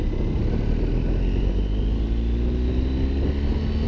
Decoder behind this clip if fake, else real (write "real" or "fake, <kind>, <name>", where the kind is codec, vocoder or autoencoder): real